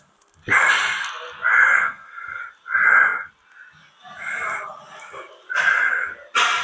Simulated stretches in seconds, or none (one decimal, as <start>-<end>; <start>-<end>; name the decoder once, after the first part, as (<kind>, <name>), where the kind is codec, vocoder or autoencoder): 1.5-2.4 (codec, SNAC)